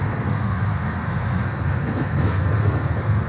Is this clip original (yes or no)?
no